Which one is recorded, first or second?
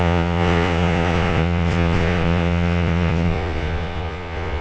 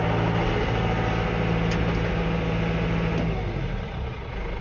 second